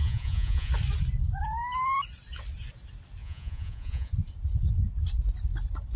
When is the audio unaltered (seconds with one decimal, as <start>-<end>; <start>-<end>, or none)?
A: 0.7-3.2; 4.1-6.0